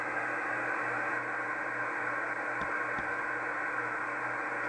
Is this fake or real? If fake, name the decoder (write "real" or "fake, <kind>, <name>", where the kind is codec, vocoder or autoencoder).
real